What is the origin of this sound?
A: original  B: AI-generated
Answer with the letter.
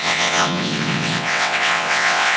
B